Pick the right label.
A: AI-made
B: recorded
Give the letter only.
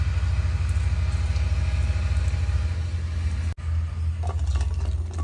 B